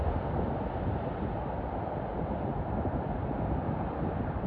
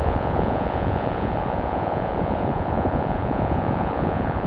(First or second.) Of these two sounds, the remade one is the second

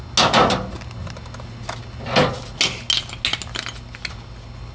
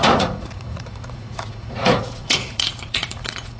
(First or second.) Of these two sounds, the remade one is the second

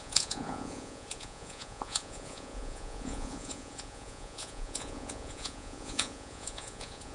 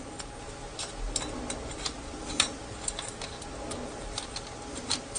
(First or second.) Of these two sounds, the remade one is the first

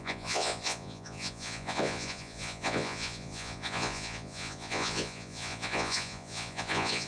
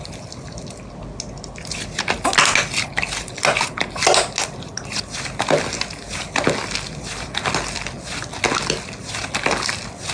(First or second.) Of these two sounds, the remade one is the first